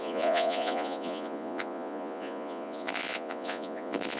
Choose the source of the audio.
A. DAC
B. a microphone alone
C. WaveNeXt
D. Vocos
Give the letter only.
D